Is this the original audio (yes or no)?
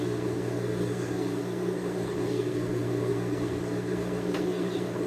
no